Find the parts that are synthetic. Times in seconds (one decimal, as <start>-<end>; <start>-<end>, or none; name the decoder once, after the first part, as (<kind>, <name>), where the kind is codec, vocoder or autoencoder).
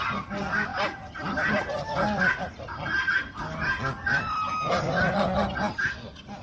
none